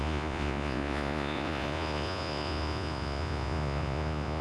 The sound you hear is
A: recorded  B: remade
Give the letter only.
B